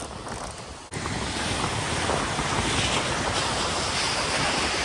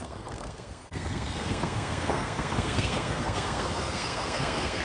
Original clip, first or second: first